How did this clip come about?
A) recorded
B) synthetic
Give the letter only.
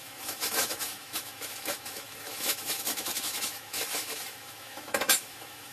B